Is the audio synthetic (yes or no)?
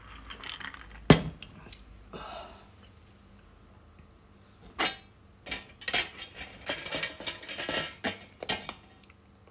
no